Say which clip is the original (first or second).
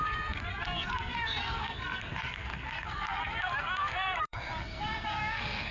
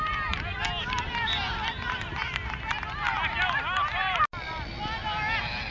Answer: second